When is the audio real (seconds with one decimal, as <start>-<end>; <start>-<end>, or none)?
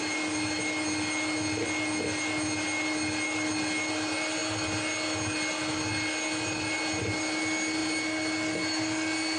0.0-9.4